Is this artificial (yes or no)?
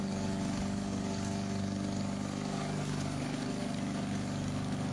yes